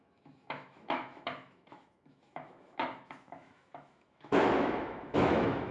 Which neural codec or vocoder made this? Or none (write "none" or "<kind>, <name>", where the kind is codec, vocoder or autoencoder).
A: autoencoder, DAC-VAE